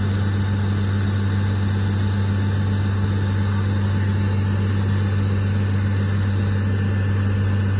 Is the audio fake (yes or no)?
no